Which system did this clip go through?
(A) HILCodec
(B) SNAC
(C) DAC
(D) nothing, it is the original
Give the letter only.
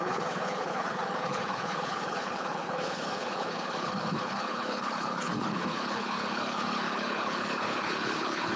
A